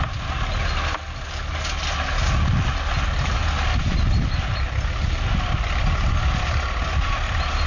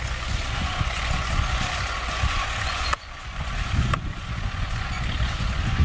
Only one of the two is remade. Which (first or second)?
second